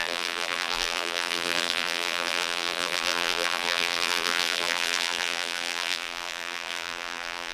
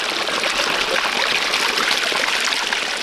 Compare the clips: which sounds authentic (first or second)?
second